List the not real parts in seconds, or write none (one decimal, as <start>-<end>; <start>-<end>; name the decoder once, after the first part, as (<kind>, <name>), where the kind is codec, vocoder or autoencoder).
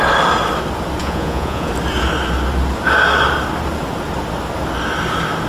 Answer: 1.0-1.7 (vocoder, Vocos)